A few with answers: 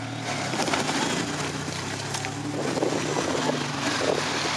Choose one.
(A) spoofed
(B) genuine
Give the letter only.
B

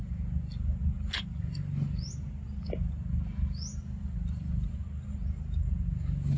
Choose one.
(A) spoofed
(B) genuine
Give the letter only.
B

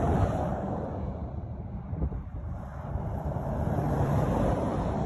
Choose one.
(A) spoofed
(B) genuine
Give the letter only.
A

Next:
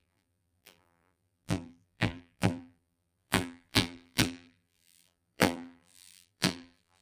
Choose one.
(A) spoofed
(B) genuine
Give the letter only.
A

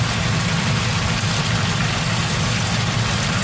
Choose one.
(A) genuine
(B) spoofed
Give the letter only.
A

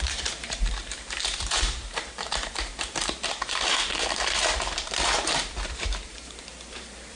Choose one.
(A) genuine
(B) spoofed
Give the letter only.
B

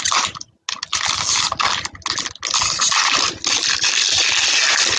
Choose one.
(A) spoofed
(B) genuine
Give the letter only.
B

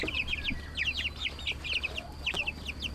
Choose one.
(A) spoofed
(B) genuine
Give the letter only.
B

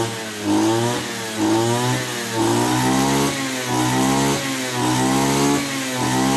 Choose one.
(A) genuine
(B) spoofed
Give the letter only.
A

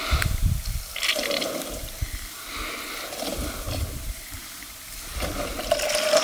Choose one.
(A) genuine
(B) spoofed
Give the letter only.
B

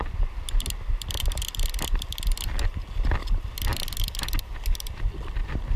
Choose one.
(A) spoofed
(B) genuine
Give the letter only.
B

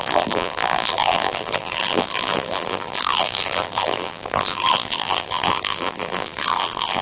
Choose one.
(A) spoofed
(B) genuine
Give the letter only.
A